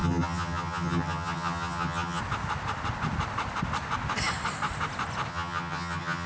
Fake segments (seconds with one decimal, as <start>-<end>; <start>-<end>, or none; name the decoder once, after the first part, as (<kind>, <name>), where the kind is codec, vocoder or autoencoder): 0.0-2.2 (vocoder, HiFi-GAN); 5.3-6.3